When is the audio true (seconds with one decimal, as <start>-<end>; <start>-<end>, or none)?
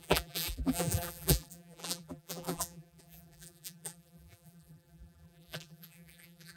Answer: none